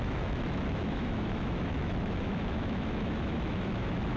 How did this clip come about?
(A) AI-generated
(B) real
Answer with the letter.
A